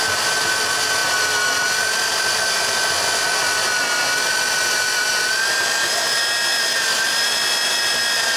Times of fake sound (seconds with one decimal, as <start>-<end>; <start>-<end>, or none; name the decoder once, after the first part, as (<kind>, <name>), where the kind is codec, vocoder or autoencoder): none